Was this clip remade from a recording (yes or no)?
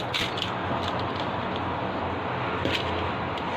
no